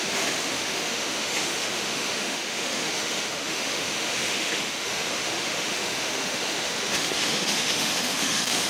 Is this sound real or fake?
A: fake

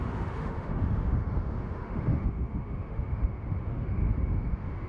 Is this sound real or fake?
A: fake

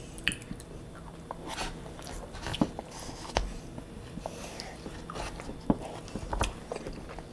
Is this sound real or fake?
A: real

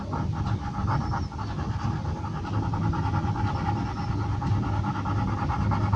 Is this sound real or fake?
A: real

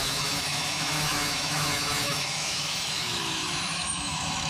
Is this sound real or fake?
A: fake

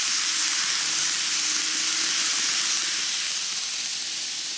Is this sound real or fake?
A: real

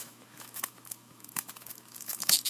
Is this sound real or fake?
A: fake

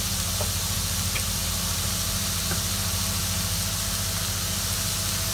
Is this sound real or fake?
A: real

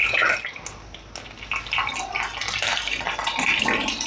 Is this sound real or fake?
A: real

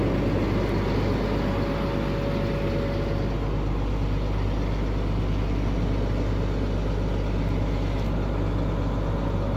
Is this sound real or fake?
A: real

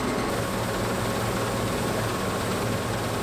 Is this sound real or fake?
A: real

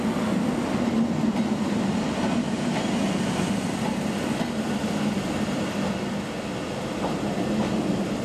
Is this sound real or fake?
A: real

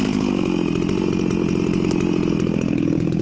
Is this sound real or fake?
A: real